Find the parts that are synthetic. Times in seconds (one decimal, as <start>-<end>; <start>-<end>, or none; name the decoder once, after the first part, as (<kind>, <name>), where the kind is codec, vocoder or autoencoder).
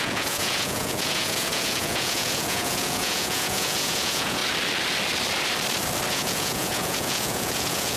0.0-4.4 (vocoder, Vocos); 6.1-8.0